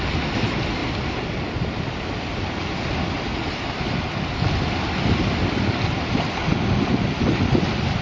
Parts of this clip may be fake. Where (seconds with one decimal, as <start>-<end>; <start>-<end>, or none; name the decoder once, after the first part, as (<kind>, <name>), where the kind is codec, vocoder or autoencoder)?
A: none